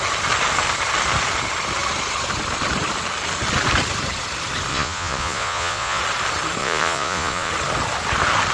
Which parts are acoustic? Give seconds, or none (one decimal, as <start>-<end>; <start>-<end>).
0.0-4.7; 6.0-6.6; 7.5-8.5